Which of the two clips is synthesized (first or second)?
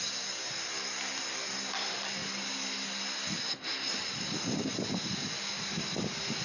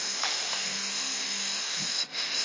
second